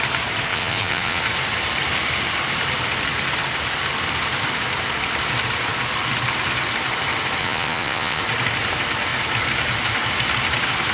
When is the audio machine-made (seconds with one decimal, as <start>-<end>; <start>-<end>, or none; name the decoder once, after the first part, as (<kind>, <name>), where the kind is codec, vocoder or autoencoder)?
0.5-1.2 (vocoder, Vocos); 7.4-8.2